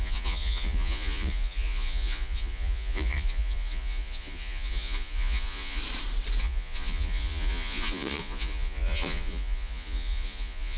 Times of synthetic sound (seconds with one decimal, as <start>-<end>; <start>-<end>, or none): 0.0-5.8; 6.4-10.8